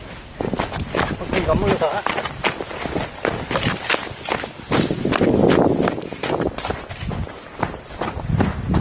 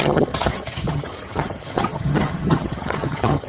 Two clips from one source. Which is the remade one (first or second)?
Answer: second